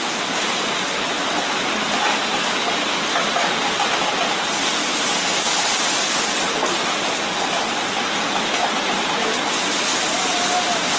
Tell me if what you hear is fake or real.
real